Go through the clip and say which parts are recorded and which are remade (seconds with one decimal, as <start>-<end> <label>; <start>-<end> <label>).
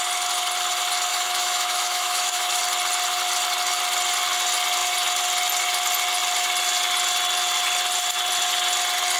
0.0-1.1 recorded; 1.1-2.6 remade; 2.6-9.2 recorded